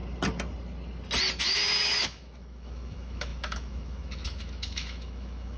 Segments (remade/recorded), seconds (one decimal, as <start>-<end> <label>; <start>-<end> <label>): 0.0-1.4 recorded; 1.4-5.6 remade